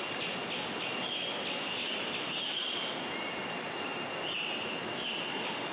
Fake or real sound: real